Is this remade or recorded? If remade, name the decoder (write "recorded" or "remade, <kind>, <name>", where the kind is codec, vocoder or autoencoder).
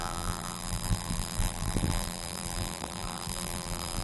remade, vocoder, BigVGAN v2